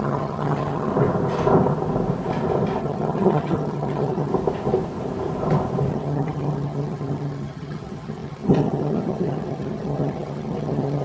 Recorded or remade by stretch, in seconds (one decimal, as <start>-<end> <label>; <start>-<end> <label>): 0.0-0.9 remade; 0.9-2.8 recorded; 2.8-4.3 remade; 4.3-5.9 recorded; 5.9-11.0 remade